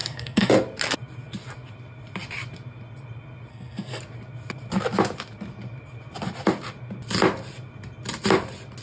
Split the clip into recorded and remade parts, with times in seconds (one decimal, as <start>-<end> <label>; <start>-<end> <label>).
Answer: 0.0-0.5 remade; 0.5-3.5 recorded; 3.5-4.0 remade; 4.0-8.8 recorded